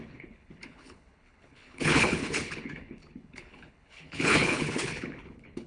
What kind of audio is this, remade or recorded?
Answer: remade